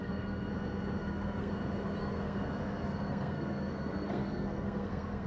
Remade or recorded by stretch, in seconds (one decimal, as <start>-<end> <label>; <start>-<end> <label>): 0.0-0.5 remade; 0.5-1.0 recorded; 1.0-1.5 remade; 1.5-2.0 recorded; 2.0-5.3 remade